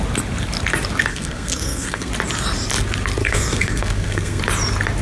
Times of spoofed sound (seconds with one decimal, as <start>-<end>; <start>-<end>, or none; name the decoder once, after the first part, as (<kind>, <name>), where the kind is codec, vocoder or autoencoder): 1.1-2.1 (codec, SNAC); 3.2-4.4